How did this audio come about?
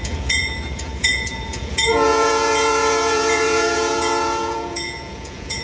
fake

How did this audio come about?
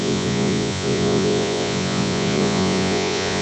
fake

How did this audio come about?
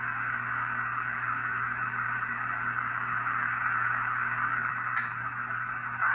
real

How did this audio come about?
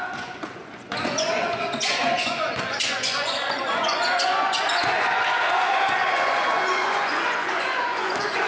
fake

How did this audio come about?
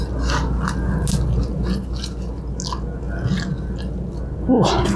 real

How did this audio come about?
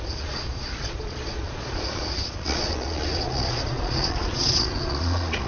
fake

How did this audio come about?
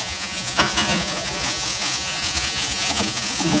fake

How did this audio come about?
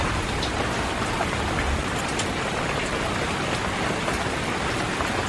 real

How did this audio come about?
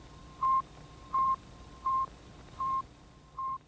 real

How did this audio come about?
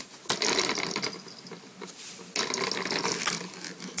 real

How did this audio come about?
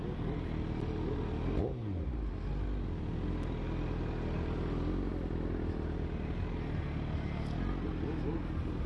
real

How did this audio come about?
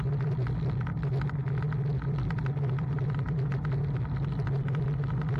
real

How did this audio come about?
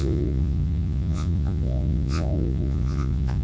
fake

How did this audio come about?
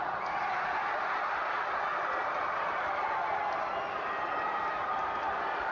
real